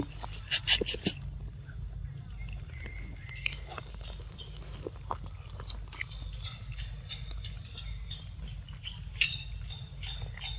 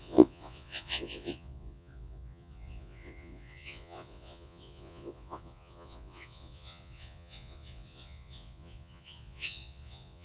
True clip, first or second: first